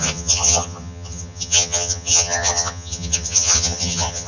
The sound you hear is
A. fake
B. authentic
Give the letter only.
A